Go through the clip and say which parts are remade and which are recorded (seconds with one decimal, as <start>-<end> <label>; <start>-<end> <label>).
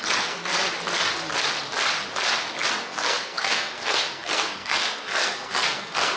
0.0-0.5 remade; 0.5-2.7 recorded; 2.7-6.2 remade